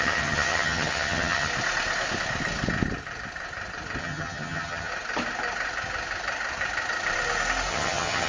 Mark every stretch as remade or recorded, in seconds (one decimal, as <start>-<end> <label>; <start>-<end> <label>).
0.0-1.5 remade; 1.5-4.0 recorded; 4.0-4.9 remade; 4.9-7.7 recorded; 7.7-8.3 remade